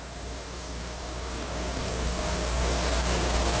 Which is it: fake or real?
fake